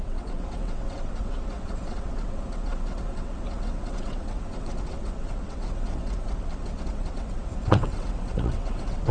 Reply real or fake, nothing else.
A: fake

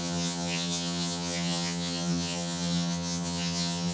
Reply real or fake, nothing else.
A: fake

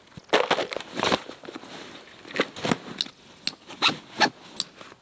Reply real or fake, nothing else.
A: real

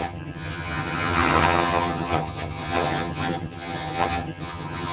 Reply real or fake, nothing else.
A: fake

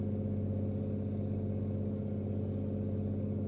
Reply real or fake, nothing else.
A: real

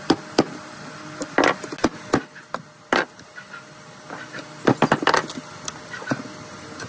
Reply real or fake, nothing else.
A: real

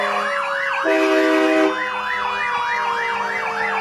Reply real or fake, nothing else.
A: real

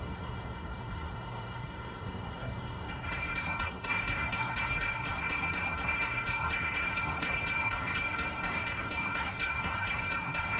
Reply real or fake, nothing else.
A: fake